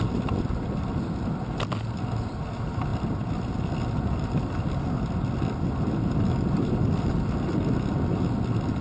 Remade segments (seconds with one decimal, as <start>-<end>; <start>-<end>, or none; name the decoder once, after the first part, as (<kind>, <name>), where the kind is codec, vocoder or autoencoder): none